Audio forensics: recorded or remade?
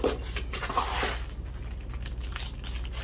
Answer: recorded